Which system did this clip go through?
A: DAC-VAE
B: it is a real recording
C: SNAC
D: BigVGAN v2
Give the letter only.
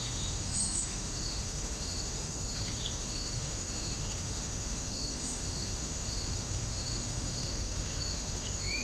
A